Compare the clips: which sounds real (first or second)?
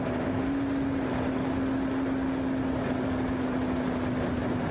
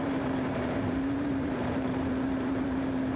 first